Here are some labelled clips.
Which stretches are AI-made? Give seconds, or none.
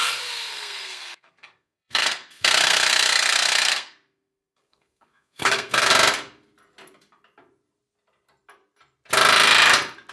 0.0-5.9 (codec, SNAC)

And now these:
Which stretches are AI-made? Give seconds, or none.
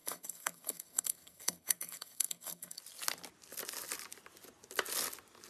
0.0-2.8 (codec, SNAC)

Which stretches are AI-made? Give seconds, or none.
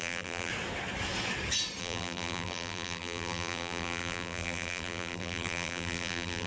0.0-0.5 (vocoder, BigVGAN v2); 1.8-6.5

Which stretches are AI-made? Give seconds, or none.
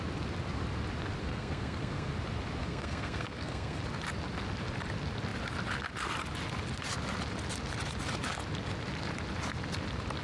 1.2-2.1 (codec, SNAC); 2.6-3.8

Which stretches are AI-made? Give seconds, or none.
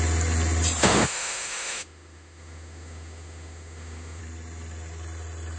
0.8-4.2 (autoencoder, DAC-VAE)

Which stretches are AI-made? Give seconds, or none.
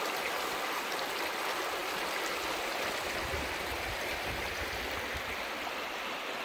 none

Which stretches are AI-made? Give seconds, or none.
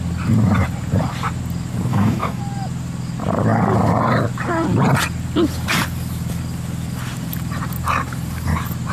1.9-2.4 (codec, DAC)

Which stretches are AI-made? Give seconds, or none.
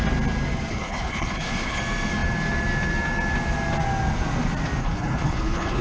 0.7-1.8 (codec, HILCodec); 4.8-5.8